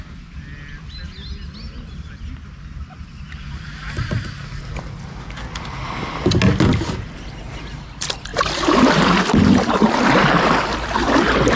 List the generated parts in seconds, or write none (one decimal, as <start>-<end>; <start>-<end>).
8.3-9.2